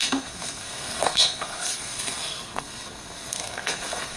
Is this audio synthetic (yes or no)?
yes